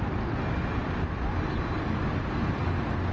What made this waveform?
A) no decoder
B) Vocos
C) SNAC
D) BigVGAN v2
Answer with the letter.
A